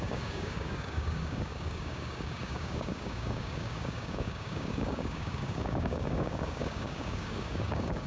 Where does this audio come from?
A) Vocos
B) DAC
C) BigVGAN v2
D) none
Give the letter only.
B